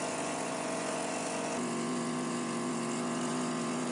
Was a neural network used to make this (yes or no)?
yes